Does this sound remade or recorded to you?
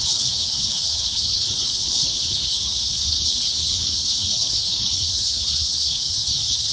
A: remade